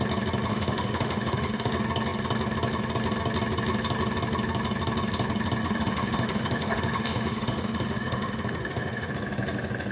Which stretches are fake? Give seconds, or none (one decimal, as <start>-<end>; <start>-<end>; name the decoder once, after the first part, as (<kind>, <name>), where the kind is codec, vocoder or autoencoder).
0.5-1.7 (autoencoder, DAC-VAE); 5.6-9.1